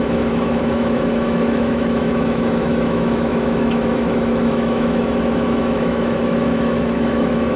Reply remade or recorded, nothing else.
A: remade